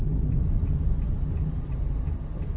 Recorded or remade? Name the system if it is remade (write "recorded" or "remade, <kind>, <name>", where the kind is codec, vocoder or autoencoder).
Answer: recorded